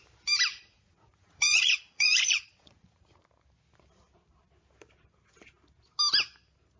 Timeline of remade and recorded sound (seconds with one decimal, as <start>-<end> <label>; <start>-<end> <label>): 0.0-0.5 recorded; 0.5-3.2 remade; 3.2-6.8 recorded